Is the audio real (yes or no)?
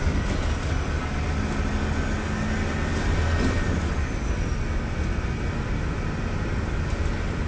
yes